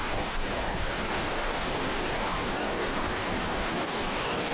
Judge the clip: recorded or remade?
remade